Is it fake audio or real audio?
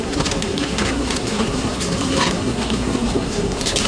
fake